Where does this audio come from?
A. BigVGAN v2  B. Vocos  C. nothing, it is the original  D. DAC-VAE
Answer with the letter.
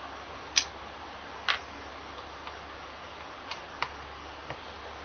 C